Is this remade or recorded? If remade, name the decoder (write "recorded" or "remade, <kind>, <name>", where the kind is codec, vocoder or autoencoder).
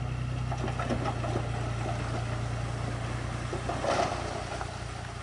recorded